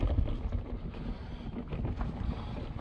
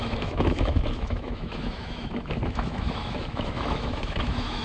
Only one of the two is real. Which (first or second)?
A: first